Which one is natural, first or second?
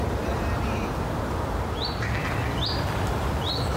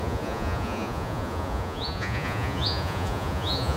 first